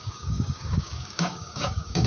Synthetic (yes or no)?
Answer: yes